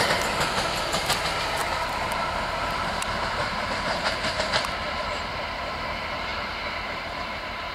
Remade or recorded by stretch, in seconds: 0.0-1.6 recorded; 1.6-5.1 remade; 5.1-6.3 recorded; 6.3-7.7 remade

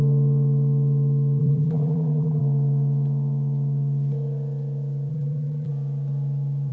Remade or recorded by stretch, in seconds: 0.0-1.4 recorded; 1.4-2.4 remade; 2.4-5.1 recorded; 5.1-5.7 remade; 5.7-6.7 recorded

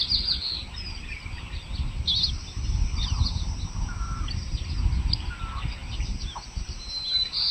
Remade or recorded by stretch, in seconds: 0.0-7.5 recorded